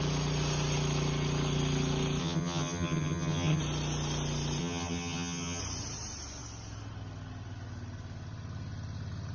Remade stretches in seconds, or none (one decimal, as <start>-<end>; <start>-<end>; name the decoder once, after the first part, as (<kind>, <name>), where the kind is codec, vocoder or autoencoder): 2.2-3.6 (vocoder, HiFi-GAN); 4.6-5.6